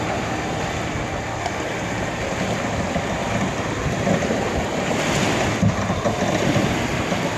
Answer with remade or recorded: recorded